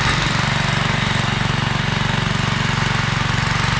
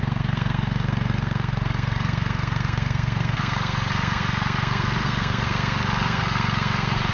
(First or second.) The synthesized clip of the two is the second